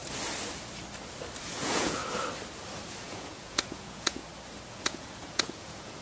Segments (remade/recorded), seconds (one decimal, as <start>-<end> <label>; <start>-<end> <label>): 0.0-1.4 recorded; 1.4-2.0 remade; 2.0-3.0 recorded; 3.0-4.2 remade; 4.2-4.7 recorded; 4.7-6.0 remade